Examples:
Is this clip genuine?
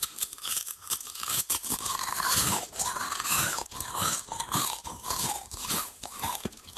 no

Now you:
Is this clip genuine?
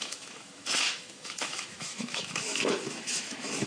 no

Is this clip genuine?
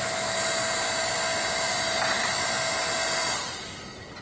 yes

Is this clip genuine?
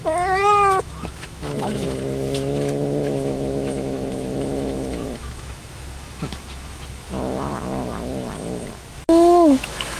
no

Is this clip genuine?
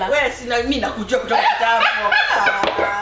yes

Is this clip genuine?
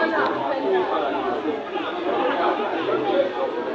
yes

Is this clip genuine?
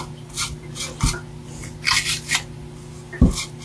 yes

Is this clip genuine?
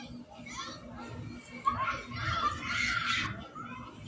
yes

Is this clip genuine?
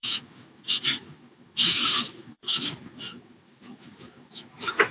no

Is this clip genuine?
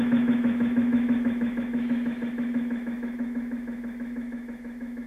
no